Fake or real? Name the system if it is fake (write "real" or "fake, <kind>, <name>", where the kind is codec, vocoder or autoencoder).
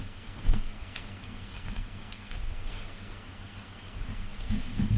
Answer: fake, codec, SNAC